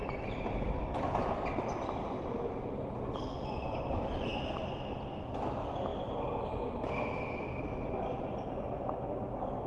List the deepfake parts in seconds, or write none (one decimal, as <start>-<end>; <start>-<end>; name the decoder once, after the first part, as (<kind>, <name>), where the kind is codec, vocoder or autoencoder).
none